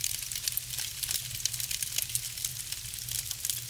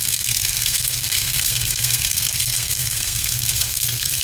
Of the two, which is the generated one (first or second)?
second